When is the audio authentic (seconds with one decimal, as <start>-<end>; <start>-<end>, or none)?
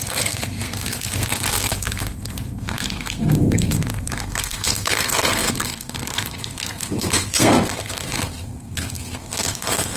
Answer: none